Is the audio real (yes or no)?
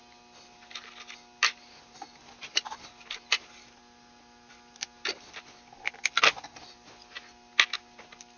yes